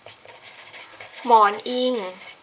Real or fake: fake